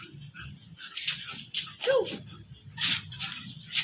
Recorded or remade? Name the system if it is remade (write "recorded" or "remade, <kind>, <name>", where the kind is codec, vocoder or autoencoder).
recorded